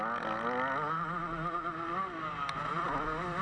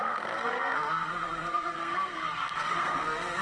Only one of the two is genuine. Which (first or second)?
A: first